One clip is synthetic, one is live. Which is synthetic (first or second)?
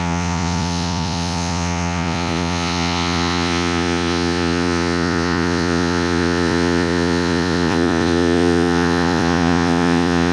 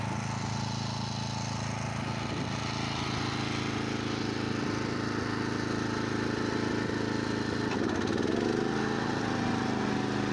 first